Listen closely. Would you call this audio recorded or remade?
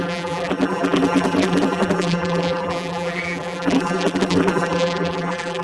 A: remade